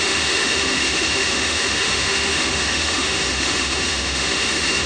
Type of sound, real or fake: fake